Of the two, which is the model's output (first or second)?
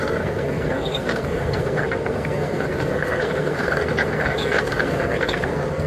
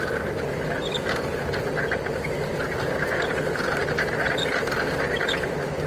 first